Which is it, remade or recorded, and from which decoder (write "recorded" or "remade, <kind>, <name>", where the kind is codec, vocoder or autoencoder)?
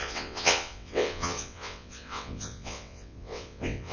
remade, vocoder, WaveNeXt